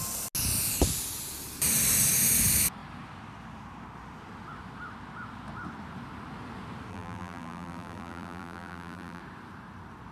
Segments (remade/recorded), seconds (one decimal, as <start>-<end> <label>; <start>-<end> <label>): 0.0-6.9 recorded; 6.9-9.2 remade; 9.2-10.1 recorded